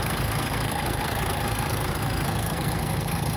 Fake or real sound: fake